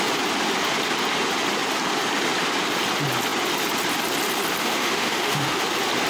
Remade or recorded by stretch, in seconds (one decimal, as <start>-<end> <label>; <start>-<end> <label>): 0.0-4.6 recorded; 4.6-5.6 remade; 5.6-6.1 recorded